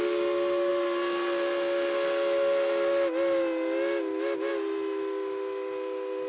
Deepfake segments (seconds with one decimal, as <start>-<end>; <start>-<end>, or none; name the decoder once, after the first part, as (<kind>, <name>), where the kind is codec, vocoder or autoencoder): none